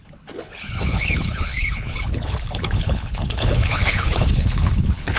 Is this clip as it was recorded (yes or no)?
no